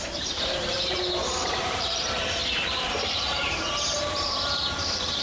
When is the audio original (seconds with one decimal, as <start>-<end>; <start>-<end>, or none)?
none